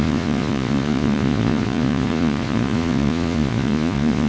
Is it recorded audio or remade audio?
remade